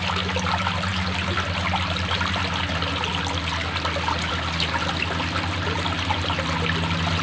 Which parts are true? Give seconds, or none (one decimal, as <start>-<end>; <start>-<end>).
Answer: 0.0-7.2